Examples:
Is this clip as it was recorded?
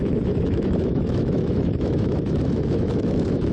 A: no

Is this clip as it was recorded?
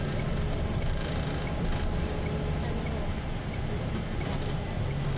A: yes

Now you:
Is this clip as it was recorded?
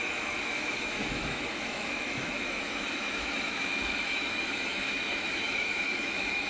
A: no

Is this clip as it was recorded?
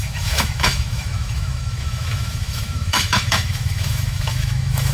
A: no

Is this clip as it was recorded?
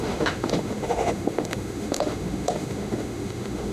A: no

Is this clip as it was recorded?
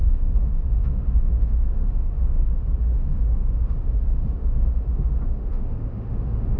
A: no